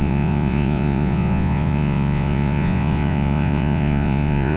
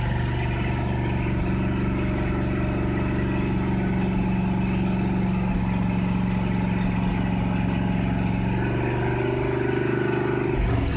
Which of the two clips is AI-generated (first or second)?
first